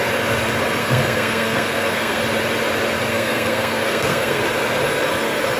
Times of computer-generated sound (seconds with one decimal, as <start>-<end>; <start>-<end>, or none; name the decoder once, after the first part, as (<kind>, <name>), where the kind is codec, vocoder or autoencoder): 0.8-2.2 (codec, SNAC); 3.1-4.4